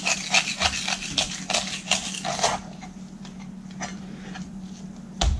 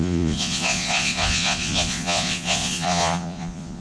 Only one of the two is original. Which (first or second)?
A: first